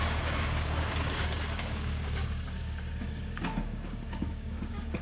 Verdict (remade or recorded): remade